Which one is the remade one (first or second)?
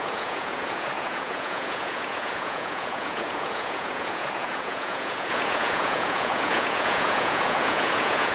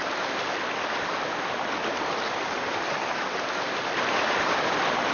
first